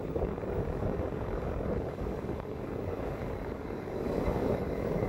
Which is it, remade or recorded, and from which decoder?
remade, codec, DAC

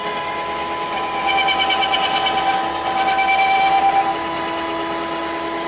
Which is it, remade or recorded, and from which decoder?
recorded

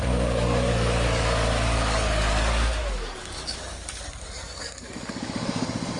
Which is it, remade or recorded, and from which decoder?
remade, codec, DAC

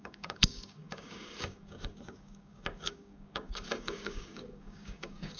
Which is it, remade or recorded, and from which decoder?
remade, codec, DAC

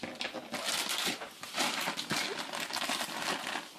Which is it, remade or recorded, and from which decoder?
recorded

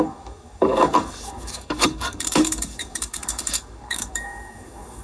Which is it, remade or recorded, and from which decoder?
remade, codec, DAC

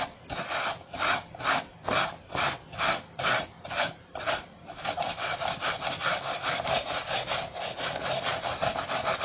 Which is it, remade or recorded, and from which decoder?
recorded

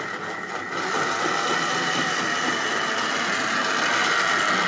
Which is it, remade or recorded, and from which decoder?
recorded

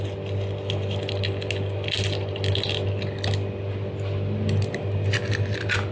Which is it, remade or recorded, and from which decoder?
recorded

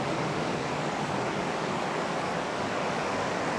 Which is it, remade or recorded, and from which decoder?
remade, codec, DAC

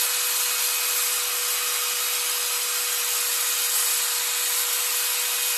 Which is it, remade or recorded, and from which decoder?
recorded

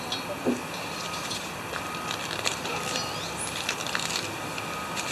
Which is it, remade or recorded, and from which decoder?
recorded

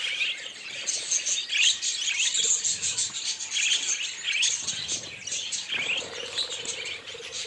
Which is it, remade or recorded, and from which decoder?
recorded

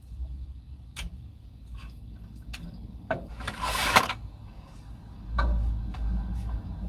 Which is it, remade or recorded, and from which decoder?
remade, codec, DAC